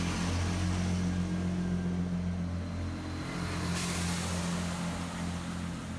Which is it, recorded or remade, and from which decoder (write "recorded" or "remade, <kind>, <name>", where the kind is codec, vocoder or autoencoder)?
recorded